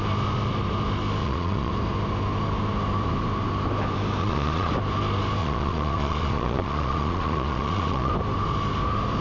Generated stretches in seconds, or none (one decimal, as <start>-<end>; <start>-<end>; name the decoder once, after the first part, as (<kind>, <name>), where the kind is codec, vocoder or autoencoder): 1.2-1.7 (vocoder, Vocos); 4.2-4.7; 5.4-8.1

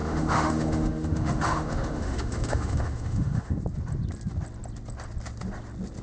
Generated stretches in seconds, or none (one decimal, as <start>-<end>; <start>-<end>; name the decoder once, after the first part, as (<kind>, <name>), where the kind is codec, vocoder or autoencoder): 0.0-3.6 (autoencoder, DAC-VAE)

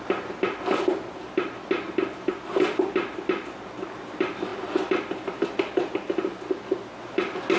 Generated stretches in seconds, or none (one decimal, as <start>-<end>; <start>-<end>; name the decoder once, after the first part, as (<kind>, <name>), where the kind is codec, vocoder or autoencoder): none

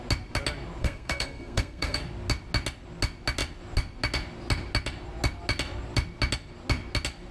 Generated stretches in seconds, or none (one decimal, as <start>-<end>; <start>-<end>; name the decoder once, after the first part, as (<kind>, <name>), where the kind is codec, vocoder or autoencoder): 0.8-2.0 (codec, SNAC)

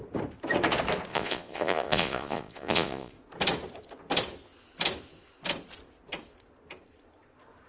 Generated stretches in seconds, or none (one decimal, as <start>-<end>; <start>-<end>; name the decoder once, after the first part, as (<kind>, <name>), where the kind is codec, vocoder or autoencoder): 1.1-3.1 (vocoder, Vocos)